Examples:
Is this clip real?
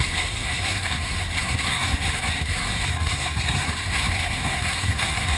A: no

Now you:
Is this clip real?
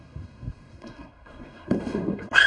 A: no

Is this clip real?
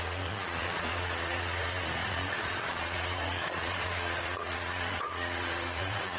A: no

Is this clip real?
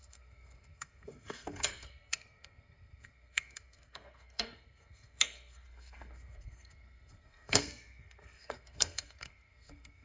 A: no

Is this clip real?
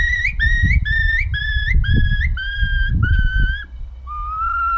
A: yes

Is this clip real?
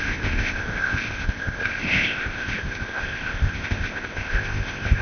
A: no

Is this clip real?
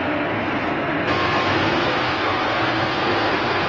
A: no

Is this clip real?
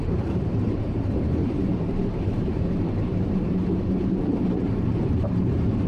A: no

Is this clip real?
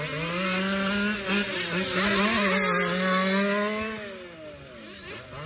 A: yes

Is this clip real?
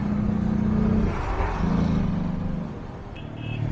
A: yes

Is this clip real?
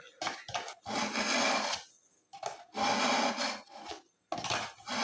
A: yes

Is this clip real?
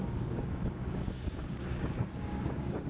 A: no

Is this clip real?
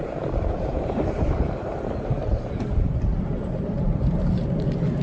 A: no